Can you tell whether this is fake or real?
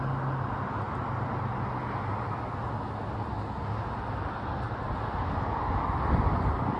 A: real